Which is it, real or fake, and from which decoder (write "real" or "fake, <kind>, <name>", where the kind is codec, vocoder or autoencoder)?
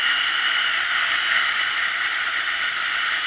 real